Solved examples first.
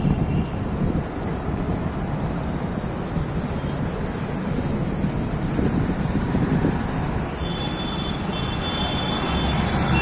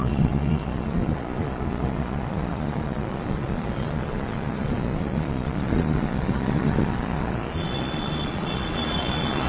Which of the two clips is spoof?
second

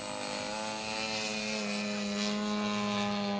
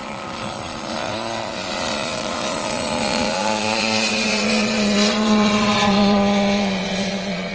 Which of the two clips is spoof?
second